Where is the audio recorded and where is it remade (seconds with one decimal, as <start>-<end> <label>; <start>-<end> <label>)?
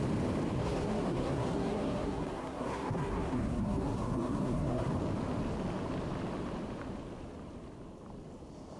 0.0-0.6 recorded; 0.6-4.9 remade; 4.9-8.8 recorded